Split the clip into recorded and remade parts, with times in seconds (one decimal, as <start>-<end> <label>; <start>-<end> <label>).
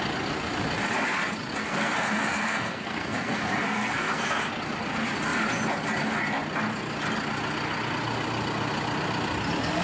0.0-1.6 recorded; 1.6-4.5 remade; 4.5-9.8 recorded